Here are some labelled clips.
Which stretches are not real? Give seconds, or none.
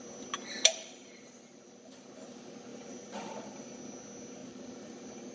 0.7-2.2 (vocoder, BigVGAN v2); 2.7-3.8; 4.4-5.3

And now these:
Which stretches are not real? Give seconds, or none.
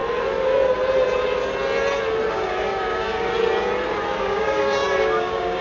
2.3-3.3 (codec, DAC); 4.2-5.6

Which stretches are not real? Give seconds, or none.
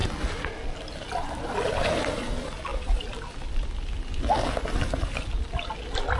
none